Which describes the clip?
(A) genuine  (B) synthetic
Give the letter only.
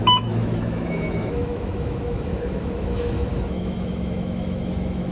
B